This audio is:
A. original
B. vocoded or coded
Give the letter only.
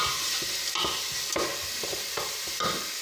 A